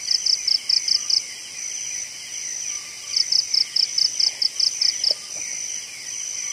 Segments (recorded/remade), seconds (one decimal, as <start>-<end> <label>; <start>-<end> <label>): 0.0-6.5 recorded